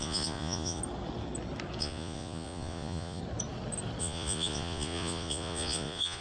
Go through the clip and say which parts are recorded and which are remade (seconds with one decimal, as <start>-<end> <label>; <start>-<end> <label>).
0.0-0.8 remade; 0.8-1.8 recorded; 1.8-3.2 remade; 3.2-4.0 recorded; 4.0-6.2 remade